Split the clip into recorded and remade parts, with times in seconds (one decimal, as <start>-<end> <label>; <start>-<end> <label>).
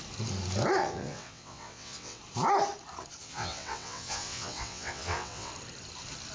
0.0-0.8 recorded; 0.8-2.2 remade; 2.2-3.2 recorded; 3.2-5.5 remade; 5.5-6.3 recorded